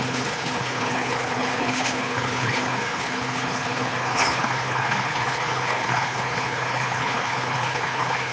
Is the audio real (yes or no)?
no